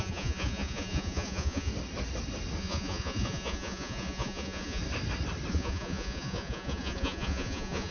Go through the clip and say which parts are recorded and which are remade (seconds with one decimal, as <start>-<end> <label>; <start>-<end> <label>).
0.0-1.7 remade; 1.7-2.6 recorded; 2.6-4.8 remade; 4.8-5.5 recorded; 5.5-7.9 remade